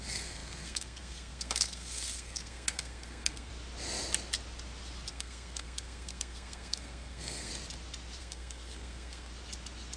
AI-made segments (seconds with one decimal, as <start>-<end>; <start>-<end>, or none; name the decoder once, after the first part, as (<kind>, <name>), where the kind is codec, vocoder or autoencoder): 0.0-3.5 (codec, SNAC); 5.1-7.5; 8.2-9.3